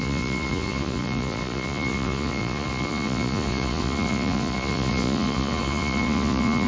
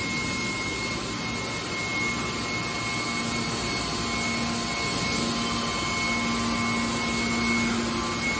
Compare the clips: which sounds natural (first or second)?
second